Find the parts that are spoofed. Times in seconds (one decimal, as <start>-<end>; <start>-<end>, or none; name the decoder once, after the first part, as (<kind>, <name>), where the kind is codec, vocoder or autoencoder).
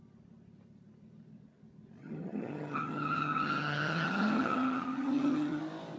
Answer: 2.0-5.6 (vocoder, HiFi-GAN)